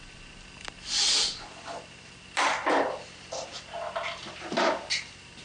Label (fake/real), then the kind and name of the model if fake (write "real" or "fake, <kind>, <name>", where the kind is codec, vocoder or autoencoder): fake, vocoder, BigVGAN v2